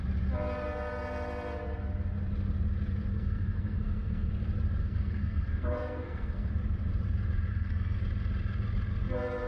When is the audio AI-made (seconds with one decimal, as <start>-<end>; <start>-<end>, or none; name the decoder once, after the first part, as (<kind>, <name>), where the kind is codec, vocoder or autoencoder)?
3.1-4.3 (codec, SNAC); 4.8-6.5; 7.5-8.0